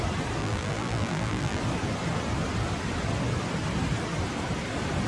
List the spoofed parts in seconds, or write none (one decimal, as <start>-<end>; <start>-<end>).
0.4-1.6